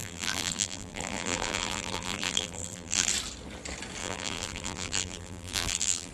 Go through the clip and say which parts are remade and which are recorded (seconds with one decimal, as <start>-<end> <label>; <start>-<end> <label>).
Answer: 0.0-3.1 remade; 3.1-4.0 recorded; 4.0-6.1 remade